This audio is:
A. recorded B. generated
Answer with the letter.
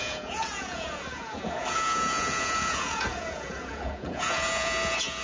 B